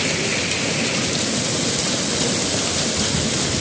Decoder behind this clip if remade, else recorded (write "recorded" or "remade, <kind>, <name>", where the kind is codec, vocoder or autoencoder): recorded